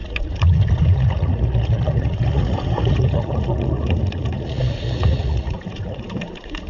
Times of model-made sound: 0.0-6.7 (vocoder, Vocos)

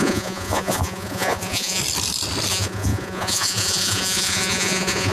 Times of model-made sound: 0.0-1.8 (vocoder, Vocos); 2.5-5.1

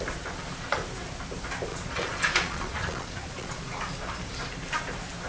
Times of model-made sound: 1.7-3.7 (vocoder, Vocos)

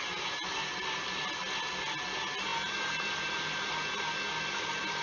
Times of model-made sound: none

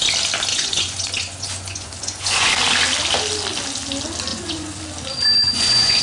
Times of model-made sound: 0.5-2.5 (vocoder, Vocos); 4.3-4.8; 5.4-6.0

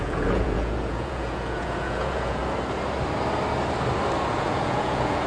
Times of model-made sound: 0.0-2.4 (vocoder, Vocos); 4.3-5.3